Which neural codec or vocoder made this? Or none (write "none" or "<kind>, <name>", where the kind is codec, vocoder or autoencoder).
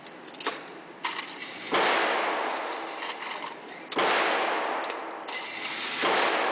none